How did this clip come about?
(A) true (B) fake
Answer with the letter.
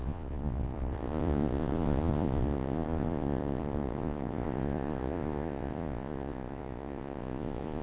B